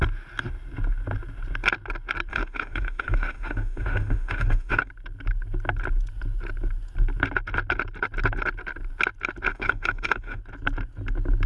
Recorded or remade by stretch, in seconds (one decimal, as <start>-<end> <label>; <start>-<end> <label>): 0.0-2.3 recorded; 2.3-4.9 remade; 4.9-9.5 recorded; 9.5-10.4 remade; 10.4-11.5 recorded